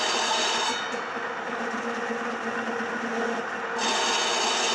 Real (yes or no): yes